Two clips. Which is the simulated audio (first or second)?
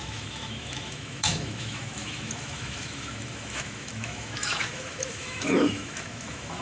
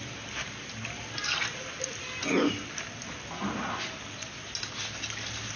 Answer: first